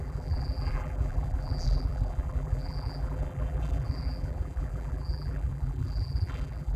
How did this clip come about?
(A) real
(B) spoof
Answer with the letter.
B